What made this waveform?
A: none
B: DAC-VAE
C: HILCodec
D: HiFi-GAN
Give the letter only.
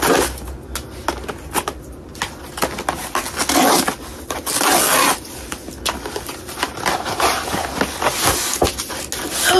A